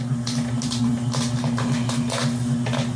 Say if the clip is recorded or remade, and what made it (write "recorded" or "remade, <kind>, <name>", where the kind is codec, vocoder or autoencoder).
recorded